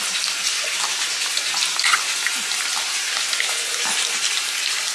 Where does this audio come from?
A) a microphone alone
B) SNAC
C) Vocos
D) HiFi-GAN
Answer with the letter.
A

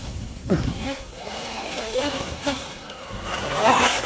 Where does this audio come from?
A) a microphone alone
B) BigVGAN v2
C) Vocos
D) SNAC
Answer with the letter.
D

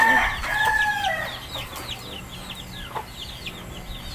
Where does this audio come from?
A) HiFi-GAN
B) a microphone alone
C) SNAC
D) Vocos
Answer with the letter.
B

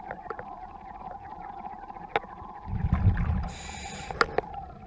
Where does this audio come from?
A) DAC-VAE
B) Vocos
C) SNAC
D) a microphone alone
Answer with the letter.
D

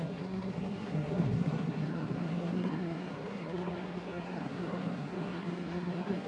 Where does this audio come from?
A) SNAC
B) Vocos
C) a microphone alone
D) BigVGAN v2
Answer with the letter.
A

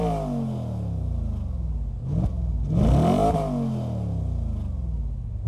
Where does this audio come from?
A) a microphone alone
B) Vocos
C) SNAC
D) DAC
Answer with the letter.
A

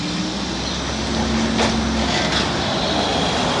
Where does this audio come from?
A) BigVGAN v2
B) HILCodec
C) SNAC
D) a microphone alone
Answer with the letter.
D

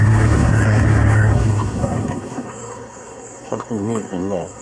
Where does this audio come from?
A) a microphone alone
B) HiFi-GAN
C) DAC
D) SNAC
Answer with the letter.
D